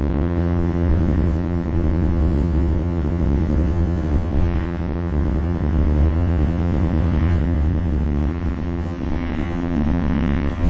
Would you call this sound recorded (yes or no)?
no